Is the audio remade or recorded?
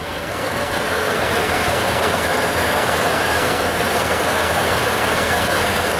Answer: remade